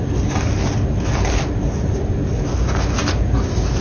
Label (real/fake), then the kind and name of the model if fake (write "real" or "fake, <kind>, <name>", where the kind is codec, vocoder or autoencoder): real